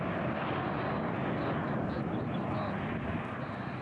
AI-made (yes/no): no